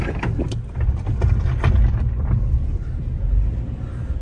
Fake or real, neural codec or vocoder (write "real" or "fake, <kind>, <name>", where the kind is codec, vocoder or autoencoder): real